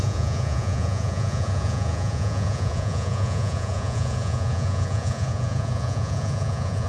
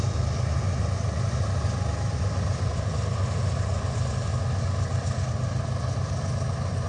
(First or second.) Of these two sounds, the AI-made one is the first